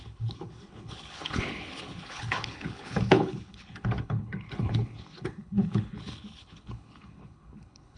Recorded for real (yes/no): no